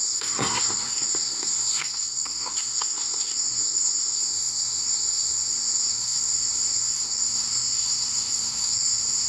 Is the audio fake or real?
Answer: fake